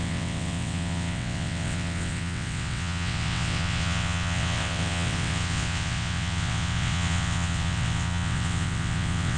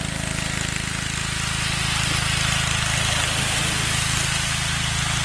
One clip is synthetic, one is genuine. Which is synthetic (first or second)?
first